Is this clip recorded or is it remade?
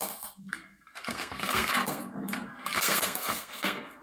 remade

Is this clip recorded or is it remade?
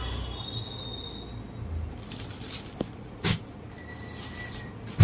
recorded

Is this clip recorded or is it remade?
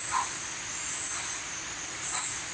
recorded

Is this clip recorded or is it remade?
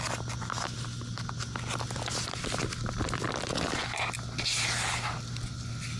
recorded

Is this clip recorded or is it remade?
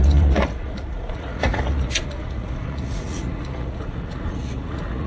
remade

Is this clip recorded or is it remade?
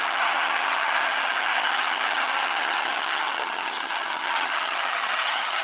remade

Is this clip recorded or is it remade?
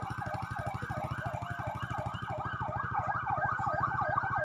recorded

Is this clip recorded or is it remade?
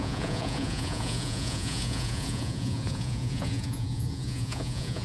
remade